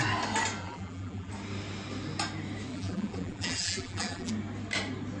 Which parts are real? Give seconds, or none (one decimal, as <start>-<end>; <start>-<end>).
0.0-0.6; 1.3-2.7; 4.3-5.2